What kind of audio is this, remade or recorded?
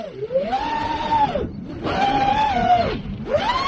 remade